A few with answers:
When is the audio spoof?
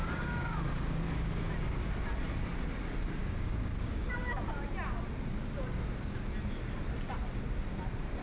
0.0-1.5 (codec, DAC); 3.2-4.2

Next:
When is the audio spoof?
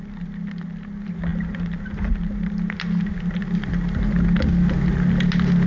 none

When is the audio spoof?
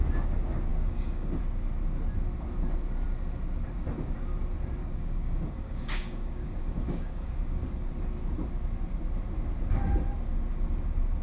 0.7-1.4 (codec, DAC); 4.8-7.9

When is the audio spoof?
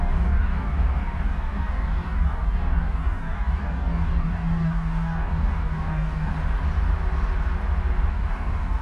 0.0-6.3 (codec, DAC); 8.1-8.8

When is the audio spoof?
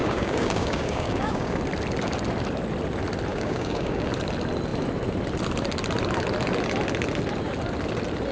0.0-1.6 (codec, DAC); 3.3-4.1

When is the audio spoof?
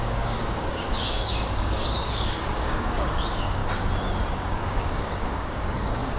0.0-3.6 (codec, DAC); 4.3-6.2